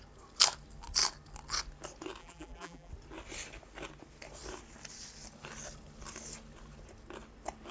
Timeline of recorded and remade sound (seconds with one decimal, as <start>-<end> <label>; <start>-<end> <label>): 0.0-2.2 recorded; 2.2-2.9 remade; 2.9-7.7 recorded